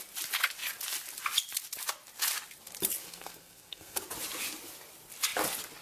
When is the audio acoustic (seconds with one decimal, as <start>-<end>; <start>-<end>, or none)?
0.0-3.0; 4.0-5.8